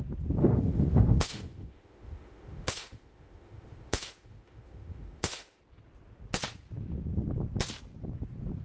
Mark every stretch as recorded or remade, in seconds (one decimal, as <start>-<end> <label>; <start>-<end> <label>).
0.0-0.4 recorded; 0.4-5.6 remade; 5.6-8.6 recorded